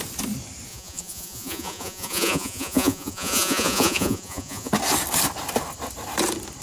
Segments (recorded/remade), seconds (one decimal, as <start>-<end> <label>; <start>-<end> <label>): 0.0-0.7 recorded; 0.7-4.7 remade; 4.7-6.6 recorded